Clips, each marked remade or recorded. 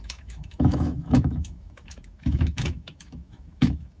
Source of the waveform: remade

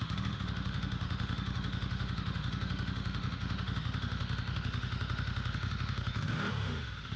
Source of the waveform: remade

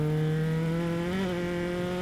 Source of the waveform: recorded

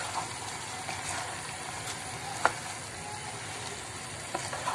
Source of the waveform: recorded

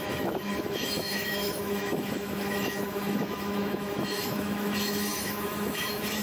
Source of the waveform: remade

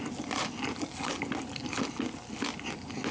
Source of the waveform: recorded